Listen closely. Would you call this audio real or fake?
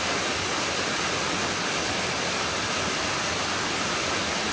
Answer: real